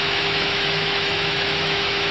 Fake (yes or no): yes